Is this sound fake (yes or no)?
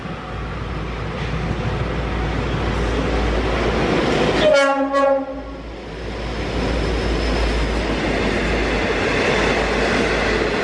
no